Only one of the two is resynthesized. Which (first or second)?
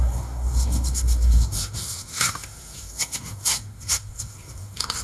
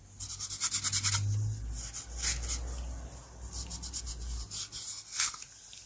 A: first